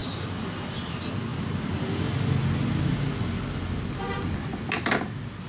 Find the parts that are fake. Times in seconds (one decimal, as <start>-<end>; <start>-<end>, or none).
none